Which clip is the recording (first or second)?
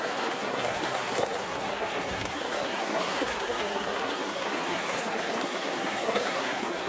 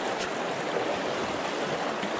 second